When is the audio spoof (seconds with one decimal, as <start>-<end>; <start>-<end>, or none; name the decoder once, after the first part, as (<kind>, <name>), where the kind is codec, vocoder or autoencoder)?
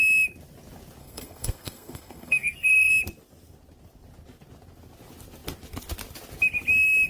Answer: 1.0-2.9 (codec, SNAC)